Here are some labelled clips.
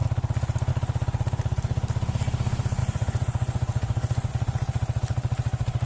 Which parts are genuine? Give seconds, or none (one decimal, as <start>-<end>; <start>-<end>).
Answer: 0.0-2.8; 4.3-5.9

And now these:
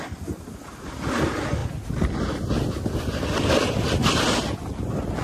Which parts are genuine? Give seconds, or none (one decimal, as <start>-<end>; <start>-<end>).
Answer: 0.0-5.2

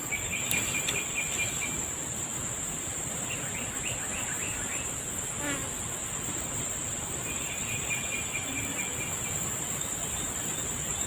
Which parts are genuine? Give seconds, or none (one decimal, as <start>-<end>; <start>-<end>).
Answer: 0.0-11.1

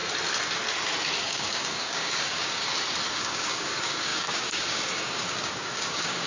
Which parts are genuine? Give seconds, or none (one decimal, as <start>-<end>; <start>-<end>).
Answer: 0.0-1.2; 2.7-3.2

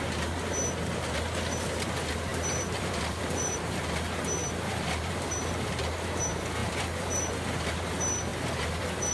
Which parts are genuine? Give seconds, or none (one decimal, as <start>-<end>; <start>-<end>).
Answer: 0.0-2.3; 3.7-4.4; 5.7-6.6; 7.3-8.3

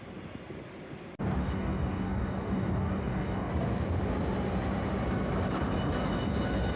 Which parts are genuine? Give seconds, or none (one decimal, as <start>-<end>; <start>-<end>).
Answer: 0.0-1.4; 3.5-6.8